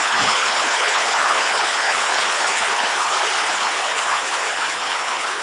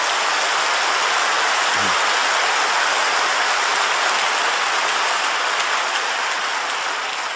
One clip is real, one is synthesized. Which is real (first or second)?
second